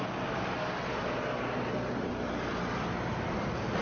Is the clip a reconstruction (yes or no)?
no